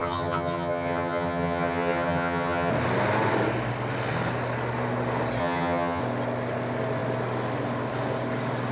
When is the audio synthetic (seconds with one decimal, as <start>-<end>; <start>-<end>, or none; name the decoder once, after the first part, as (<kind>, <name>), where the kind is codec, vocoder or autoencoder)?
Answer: 0.0-2.7 (vocoder, HiFi-GAN); 5.4-6.0